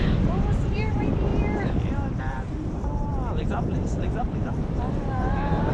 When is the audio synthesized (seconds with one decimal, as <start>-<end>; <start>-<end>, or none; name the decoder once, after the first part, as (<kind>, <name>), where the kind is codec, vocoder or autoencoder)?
0.0-1.3 (vocoder, BigVGAN v2); 2.2-3.1; 4.2-5.7